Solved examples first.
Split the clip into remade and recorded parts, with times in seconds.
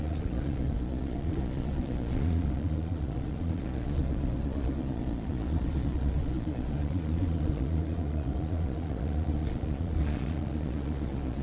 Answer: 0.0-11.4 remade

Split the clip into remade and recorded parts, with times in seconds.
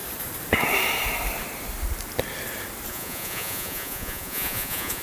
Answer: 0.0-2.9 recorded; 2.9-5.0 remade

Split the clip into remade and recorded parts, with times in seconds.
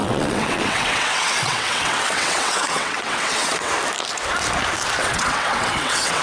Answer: 0.0-3.7 remade; 3.7-5.0 recorded; 5.0-6.2 remade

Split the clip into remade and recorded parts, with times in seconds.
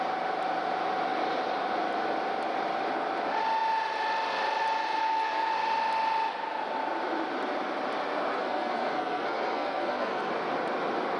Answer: 0.0-5.0 recorded; 5.0-5.5 remade; 5.5-8.3 recorded; 8.3-10.3 remade; 10.3-11.2 recorded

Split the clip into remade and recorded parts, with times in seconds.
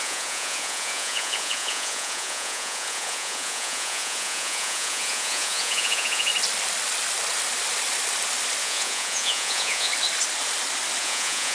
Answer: 0.0-6.3 remade; 6.3-8.6 recorded; 8.6-9.9 remade; 9.9-11.0 recorded; 11.0-11.5 remade